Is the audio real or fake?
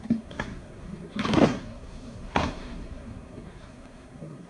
fake